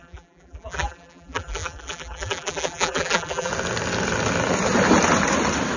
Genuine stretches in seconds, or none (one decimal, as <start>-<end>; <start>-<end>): 3.5-5.8

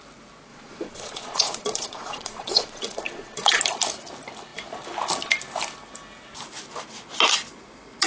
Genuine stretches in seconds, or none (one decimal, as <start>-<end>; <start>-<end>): 0.0-0.5; 3.6-8.1

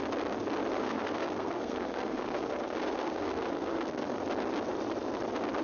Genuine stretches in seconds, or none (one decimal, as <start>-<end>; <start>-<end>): 0.0-0.8; 4.2-5.6

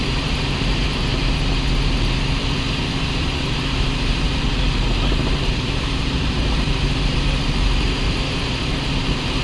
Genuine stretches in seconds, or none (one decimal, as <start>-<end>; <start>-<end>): 1.1-3.0